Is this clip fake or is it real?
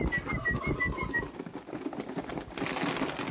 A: real